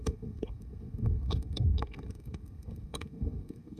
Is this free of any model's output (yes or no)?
no